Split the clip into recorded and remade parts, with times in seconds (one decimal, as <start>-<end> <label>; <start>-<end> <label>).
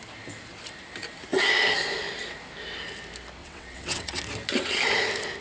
0.0-3.4 recorded; 3.4-4.2 remade; 4.2-5.4 recorded